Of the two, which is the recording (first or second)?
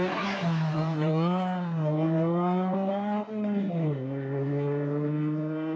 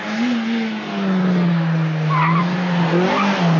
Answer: second